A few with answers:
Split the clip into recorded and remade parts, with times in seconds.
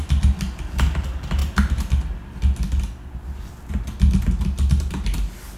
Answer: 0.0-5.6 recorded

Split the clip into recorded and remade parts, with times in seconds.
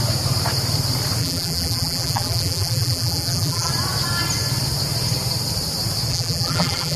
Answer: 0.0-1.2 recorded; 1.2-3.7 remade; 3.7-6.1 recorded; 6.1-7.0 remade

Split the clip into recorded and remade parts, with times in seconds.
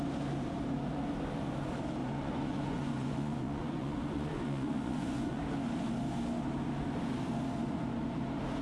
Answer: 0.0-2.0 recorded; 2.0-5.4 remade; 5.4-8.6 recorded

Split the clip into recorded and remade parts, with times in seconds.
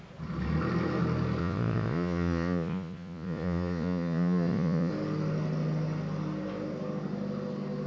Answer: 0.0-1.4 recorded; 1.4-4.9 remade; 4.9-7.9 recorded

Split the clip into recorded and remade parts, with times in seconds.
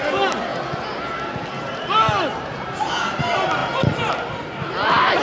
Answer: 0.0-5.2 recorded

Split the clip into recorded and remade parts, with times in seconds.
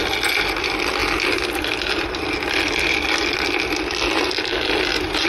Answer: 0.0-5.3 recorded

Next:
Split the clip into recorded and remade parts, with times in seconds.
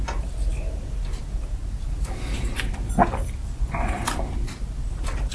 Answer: 0.0-3.4 recorded; 3.4-3.9 remade; 3.9-5.3 recorded